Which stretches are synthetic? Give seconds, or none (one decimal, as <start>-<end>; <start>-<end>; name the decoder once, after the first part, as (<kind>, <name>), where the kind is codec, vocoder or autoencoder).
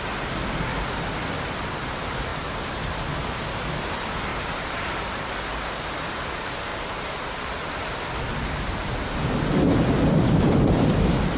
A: 2.3-3.5 (vocoder, BigVGAN v2); 4.3-5.3; 6.7-8.3